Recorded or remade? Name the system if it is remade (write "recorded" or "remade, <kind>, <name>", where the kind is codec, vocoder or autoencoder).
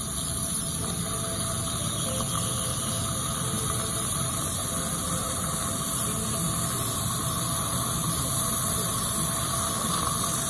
recorded